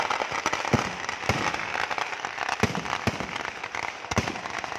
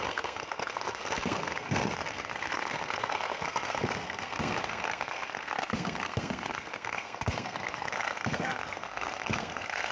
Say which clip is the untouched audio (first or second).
first